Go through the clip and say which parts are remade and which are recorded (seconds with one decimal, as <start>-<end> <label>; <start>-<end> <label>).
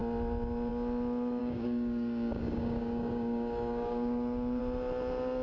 0.0-1.4 recorded; 1.4-4.6 remade; 4.6-5.4 recorded